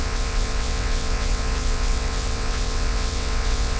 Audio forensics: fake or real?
fake